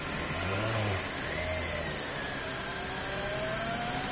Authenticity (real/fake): real